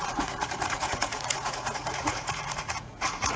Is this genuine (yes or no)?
no